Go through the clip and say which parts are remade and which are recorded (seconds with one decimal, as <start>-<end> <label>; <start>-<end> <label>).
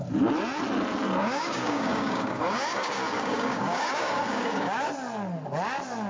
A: 0.0-1.2 recorded; 1.2-4.9 remade; 4.9-6.1 recorded